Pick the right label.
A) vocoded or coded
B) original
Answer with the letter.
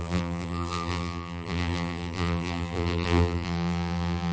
A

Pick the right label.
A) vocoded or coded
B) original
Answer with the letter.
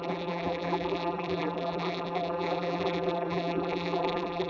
A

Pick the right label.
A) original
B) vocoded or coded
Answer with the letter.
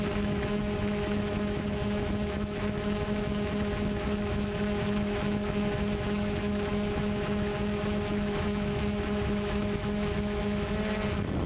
B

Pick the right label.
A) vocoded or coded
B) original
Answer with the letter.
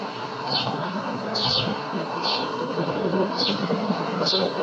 A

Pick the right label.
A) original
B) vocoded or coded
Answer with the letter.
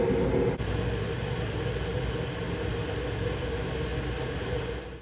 A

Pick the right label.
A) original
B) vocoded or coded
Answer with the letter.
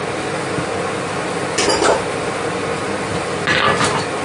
A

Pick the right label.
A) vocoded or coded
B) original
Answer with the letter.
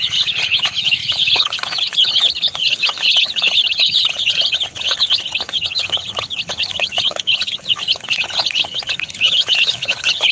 A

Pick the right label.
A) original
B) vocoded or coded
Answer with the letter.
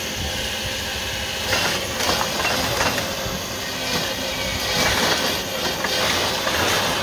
A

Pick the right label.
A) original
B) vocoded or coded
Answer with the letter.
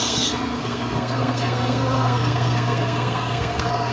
B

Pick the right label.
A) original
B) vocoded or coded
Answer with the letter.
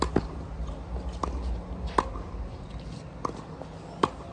A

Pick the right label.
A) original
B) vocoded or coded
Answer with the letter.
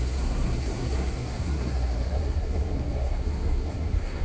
B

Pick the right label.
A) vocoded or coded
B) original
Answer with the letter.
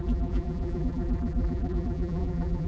A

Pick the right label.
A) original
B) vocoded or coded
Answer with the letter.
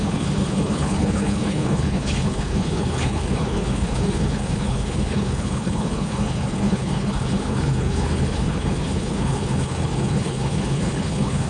B